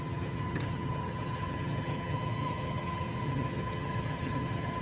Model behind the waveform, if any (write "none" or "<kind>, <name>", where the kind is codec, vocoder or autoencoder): vocoder, HiFi-GAN